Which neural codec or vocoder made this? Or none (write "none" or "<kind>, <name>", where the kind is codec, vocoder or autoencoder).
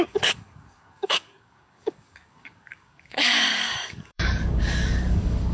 codec, DAC